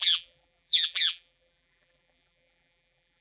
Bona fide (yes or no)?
no